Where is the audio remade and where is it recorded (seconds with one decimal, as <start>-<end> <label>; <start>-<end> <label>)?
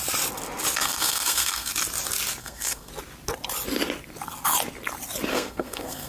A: 0.0-0.8 recorded; 0.8-1.7 remade; 1.7-2.4 recorded; 2.4-2.9 remade; 2.9-5.3 recorded; 5.3-6.1 remade